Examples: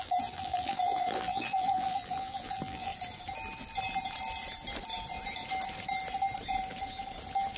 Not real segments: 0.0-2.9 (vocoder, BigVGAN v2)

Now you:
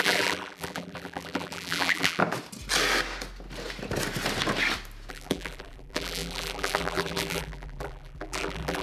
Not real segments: 0.0-2.2 (vocoder, BigVGAN v2); 5.1-8.8

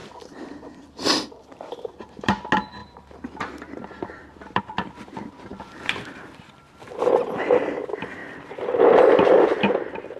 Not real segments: 0.0-2.4 (vocoder, BigVGAN v2); 2.8-4.6; 5.5-6.3

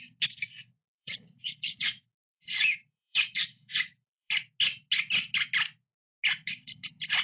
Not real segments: 0.8-4.3 (vocoder, BigVGAN v2)

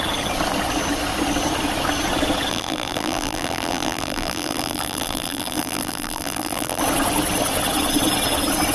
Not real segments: 2.5-6.8 (vocoder, BigVGAN v2)